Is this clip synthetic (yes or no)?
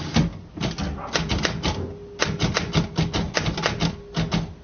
no